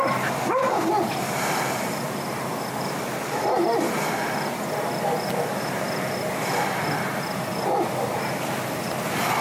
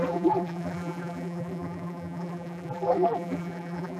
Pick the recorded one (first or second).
first